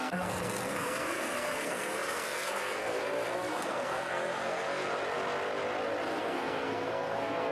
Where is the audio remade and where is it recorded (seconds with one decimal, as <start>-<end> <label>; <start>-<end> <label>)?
0.0-4.8 remade; 4.8-6.2 recorded; 6.2-7.5 remade